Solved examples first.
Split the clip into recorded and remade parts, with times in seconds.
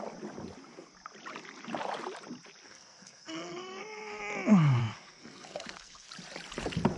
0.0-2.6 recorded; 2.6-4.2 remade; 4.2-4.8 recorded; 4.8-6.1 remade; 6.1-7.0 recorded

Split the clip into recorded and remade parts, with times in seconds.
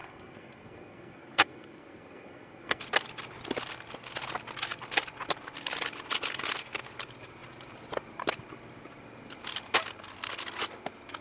0.0-2.8 remade; 2.8-11.2 recorded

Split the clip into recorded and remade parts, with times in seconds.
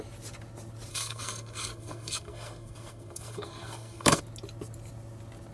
0.0-0.9 recorded; 0.9-4.2 remade; 4.2-5.5 recorded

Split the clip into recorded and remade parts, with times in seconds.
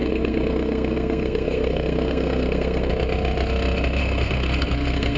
0.0-2.9 remade; 2.9-4.0 recorded; 4.0-5.2 remade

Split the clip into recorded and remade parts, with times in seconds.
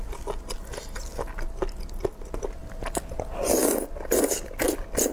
0.0-5.1 recorded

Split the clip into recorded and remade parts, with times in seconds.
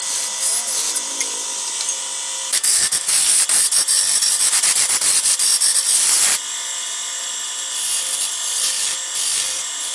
0.0-2.5 recorded; 2.5-3.4 remade; 3.4-9.9 recorded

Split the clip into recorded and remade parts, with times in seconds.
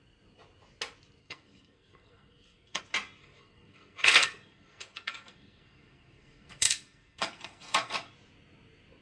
0.0-1.2 recorded; 1.2-2.8 remade; 2.8-3.2 recorded; 3.2-8.1 remade; 8.1-9.0 recorded